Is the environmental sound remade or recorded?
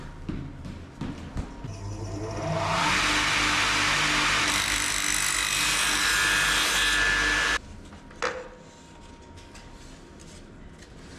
recorded